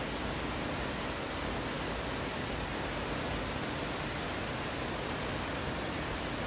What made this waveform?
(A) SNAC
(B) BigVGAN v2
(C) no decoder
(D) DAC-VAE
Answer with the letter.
C